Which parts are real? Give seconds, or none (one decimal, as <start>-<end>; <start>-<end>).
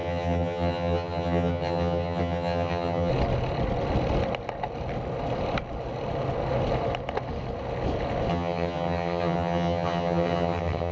3.1-8.3